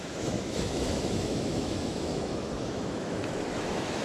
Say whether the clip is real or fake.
fake